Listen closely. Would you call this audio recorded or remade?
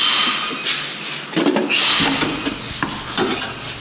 recorded